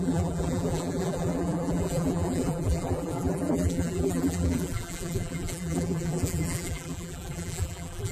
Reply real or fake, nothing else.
fake